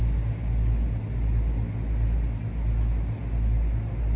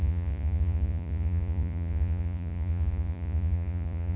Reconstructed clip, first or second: second